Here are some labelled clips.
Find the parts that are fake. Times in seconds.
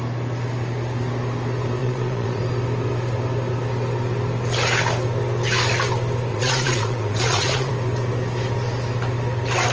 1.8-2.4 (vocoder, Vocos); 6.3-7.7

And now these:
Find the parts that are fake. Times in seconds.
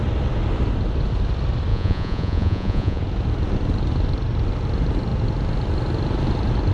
1.7-3.0 (vocoder, Vocos)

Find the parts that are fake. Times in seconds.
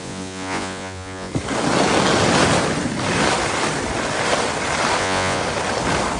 0.0-1.3 (vocoder, Vocos); 5.0-5.4